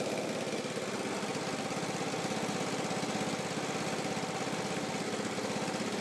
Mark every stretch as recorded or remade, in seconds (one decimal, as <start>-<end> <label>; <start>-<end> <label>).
0.0-6.0 recorded

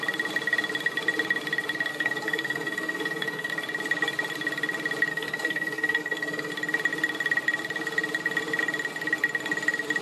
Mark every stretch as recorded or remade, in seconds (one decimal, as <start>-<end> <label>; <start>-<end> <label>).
0.0-1.9 recorded; 1.9-3.5 remade; 3.5-5.1 recorded; 5.1-6.5 remade; 6.5-10.0 recorded